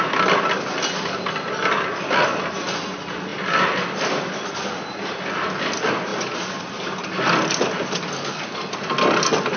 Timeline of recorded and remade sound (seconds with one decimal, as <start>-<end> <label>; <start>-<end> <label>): 0.0-9.6 recorded